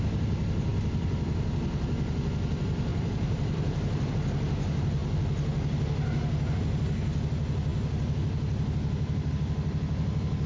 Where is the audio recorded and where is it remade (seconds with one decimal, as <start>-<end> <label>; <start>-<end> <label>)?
0.0-2.9 recorded; 2.9-4.1 remade; 4.1-10.5 recorded